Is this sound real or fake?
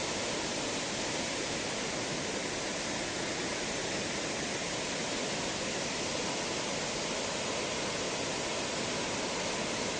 real